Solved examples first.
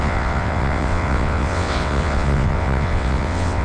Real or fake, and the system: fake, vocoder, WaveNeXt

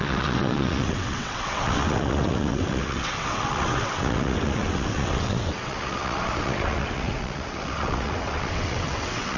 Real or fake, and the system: fake, vocoder, WaveNeXt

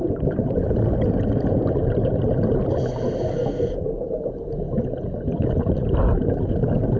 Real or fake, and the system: real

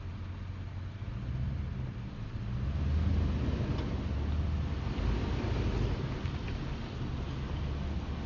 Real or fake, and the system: real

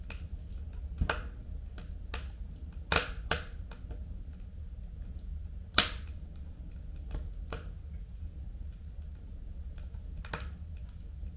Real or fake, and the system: real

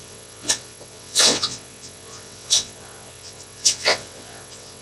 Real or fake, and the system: fake, vocoder, WaveNeXt